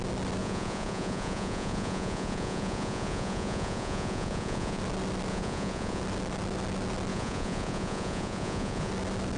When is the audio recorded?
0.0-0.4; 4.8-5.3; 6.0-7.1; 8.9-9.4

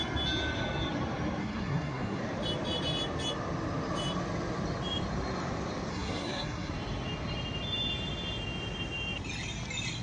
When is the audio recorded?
0.0-1.4; 2.2-5.9; 6.7-10.0

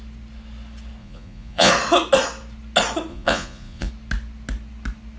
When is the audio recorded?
0.0-1.0; 1.7-3.1; 3.9-5.2

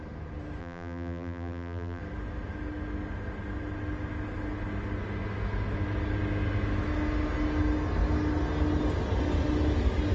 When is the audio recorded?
0.0-0.6; 2.0-10.1

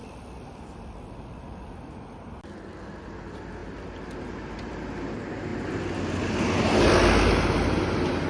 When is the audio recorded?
0.0-8.3

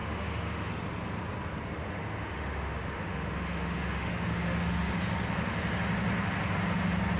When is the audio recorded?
0.7-1.8; 4.9-7.2

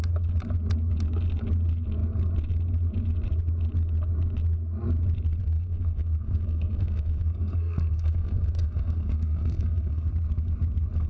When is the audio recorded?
0.0-5.4; 10.1-11.1

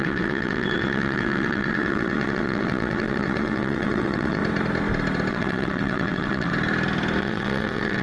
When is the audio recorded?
4.4-5.3; 6.5-7.2